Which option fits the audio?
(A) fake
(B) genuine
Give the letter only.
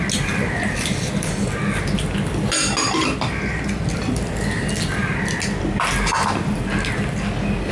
B